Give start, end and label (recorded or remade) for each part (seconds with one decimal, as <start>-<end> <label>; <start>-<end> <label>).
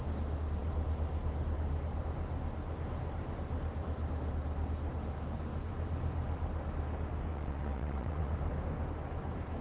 0.0-7.3 recorded; 7.3-8.3 remade; 8.3-9.6 recorded